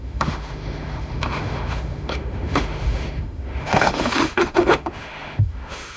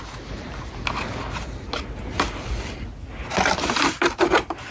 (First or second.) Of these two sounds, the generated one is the first